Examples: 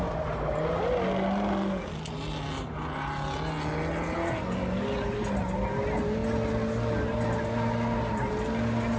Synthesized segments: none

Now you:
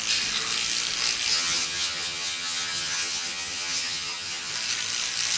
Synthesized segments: 1.3-4.5 (vocoder, HiFi-GAN)

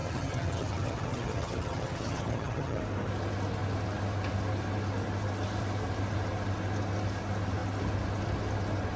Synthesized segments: 0.0-2.8 (vocoder, HiFi-GAN)

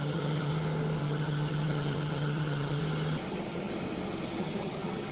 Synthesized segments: 0.0-0.5 (vocoder, HiFi-GAN); 1.0-2.8; 3.3-3.7; 4.4-5.1